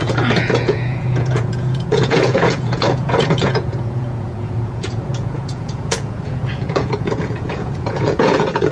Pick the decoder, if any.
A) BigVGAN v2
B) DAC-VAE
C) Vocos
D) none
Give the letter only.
C